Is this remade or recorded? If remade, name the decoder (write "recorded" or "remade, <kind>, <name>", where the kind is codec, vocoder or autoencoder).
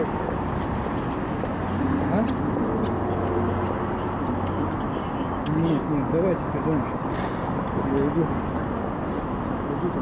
recorded